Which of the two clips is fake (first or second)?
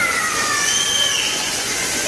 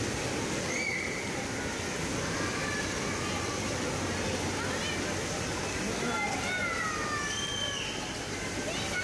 first